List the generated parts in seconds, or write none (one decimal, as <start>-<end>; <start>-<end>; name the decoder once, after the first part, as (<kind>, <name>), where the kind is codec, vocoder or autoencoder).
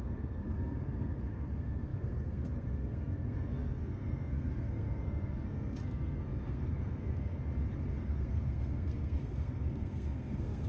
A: 0.0-7.4 (codec, SNAC); 8.0-10.7